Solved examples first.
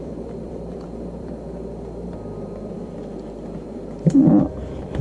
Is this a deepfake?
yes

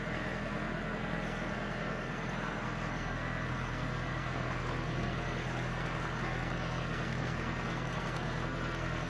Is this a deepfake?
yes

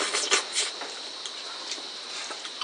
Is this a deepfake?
no